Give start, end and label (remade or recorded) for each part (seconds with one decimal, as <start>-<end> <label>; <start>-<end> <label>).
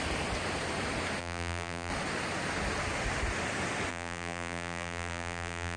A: 0.0-1.2 recorded; 1.2-1.9 remade; 1.9-3.9 recorded; 3.9-5.8 remade